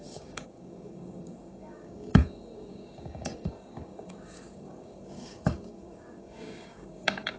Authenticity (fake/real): fake